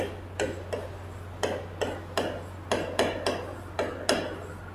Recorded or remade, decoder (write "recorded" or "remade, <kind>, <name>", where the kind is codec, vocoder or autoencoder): recorded